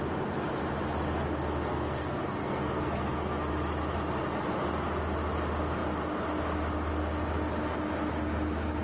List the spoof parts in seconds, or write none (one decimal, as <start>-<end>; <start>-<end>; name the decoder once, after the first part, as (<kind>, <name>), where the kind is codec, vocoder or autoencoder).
1.7-3.5 (codec, SNAC)